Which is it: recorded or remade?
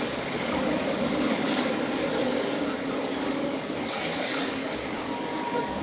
remade